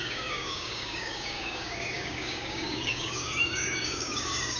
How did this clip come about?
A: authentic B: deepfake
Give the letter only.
B